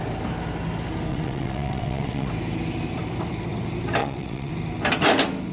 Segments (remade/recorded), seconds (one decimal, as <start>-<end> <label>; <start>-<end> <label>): 0.0-1.1 recorded; 1.1-2.3 remade; 2.3-4.0 recorded; 4.0-4.5 remade; 4.5-5.5 recorded